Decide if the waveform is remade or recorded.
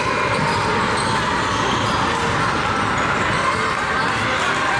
recorded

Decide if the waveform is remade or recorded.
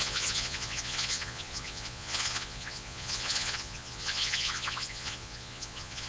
remade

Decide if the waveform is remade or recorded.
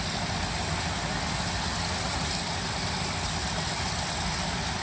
recorded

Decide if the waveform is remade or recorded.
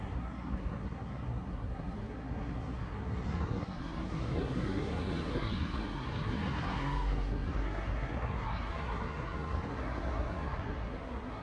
remade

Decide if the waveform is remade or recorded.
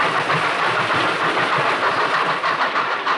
remade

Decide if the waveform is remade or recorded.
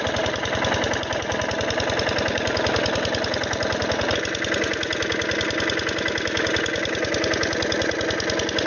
recorded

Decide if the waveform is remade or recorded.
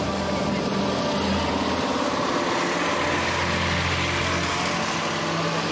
recorded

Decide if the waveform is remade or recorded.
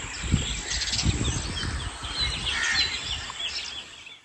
recorded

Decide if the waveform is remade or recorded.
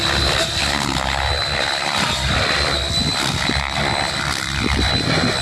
recorded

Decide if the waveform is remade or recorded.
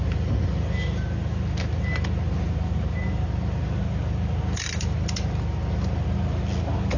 recorded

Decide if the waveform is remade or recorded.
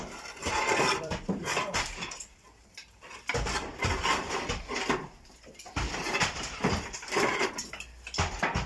remade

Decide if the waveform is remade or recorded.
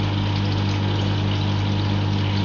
recorded